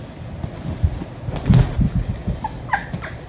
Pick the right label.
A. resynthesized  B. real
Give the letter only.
B